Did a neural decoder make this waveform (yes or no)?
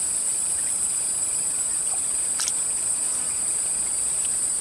yes